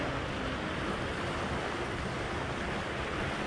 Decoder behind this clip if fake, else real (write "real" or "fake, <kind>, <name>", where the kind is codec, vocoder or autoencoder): real